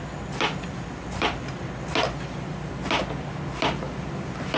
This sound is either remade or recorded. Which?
recorded